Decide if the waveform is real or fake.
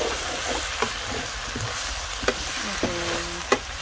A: real